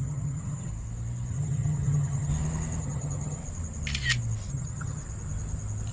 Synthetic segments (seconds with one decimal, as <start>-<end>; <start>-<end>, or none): 0.0-0.7; 1.3-2.3; 2.8-3.4; 4.5-5.0